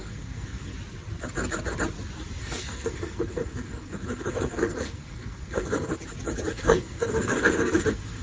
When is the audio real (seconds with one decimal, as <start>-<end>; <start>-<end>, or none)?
0.7-2.4; 5.9-6.5